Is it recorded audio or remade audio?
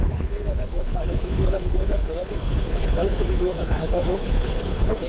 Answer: remade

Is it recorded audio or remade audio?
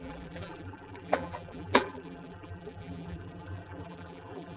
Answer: remade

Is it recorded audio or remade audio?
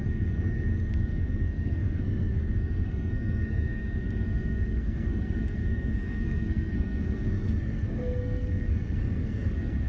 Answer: remade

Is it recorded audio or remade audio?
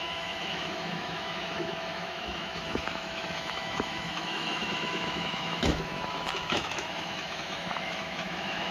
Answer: remade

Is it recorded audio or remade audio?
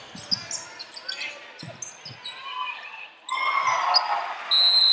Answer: recorded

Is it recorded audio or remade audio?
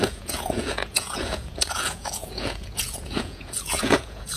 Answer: remade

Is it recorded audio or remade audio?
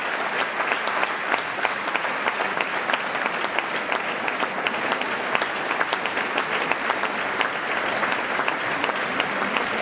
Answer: recorded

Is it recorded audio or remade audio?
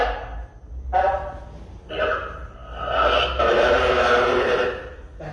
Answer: recorded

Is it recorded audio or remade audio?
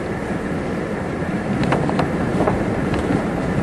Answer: remade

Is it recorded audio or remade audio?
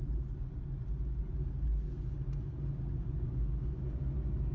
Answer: recorded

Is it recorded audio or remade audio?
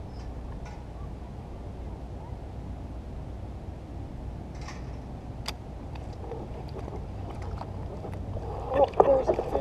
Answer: recorded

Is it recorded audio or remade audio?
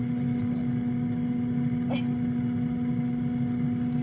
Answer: recorded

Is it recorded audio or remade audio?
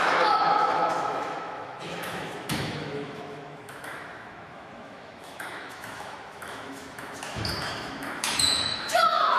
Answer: remade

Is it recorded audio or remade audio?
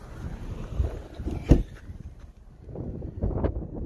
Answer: recorded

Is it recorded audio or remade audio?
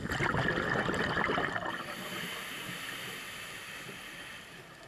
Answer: recorded